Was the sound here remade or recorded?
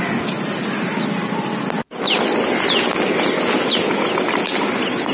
recorded